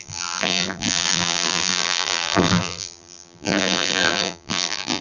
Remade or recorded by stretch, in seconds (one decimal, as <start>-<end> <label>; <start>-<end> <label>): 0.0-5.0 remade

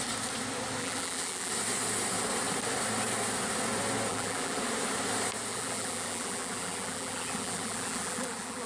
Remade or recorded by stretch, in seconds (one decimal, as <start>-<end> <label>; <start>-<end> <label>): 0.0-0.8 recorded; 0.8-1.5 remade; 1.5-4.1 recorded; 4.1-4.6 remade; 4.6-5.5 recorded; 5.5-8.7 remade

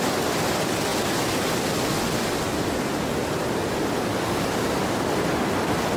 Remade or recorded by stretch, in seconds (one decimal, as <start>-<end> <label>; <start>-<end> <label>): 0.0-6.0 recorded

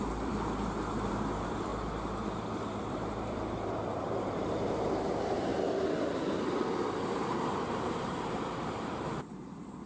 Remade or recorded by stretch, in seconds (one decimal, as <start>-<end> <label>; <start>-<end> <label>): 0.0-1.7 remade; 1.7-2.8 recorded; 2.8-5.5 remade; 5.5-6.9 recorded; 6.9-9.9 remade

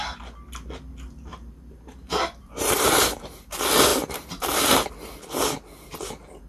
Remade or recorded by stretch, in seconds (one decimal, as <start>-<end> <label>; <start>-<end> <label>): 0.0-1.3 recorded; 1.3-3.4 remade; 3.4-3.9 recorded; 3.9-4.9 remade; 4.9-6.5 recorded

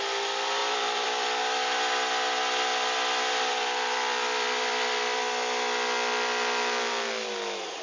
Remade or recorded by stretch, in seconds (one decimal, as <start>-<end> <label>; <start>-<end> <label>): 0.0-0.6 recorded; 0.6-1.4 remade; 1.4-2.7 recorded; 2.7-5.2 remade; 5.2-7.8 recorded